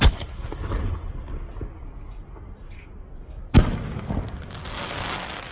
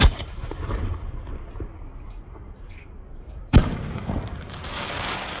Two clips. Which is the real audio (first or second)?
first